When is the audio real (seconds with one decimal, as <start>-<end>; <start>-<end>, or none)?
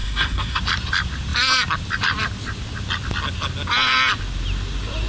0.6-5.1